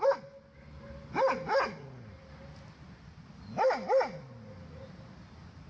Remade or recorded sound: recorded